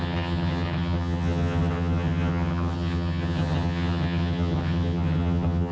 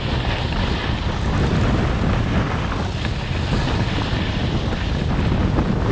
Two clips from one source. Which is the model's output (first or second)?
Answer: first